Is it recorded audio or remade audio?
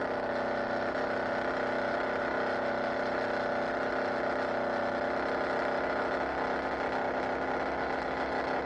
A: recorded